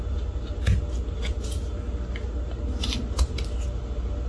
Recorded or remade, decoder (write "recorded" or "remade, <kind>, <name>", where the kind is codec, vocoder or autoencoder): recorded